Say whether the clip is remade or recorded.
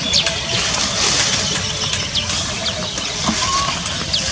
recorded